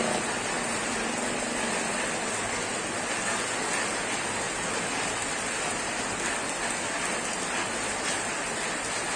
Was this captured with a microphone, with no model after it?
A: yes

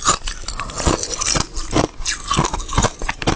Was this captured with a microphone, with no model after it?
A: yes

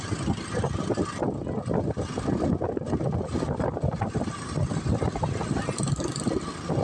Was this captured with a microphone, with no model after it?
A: yes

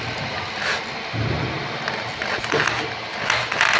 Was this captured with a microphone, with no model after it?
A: yes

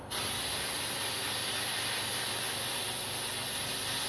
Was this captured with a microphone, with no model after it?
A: yes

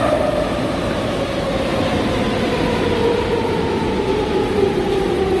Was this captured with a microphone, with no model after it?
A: yes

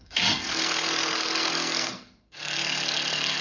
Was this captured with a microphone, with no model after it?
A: no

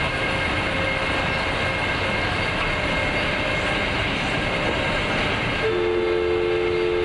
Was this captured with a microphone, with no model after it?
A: yes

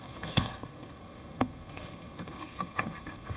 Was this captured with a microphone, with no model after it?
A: no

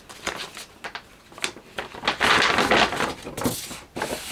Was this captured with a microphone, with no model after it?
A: yes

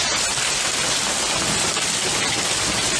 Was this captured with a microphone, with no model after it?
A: yes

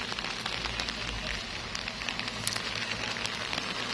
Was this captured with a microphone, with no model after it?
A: yes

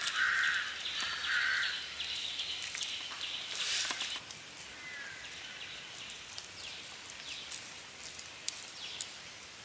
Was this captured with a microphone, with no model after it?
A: yes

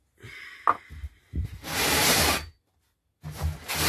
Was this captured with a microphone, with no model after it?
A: yes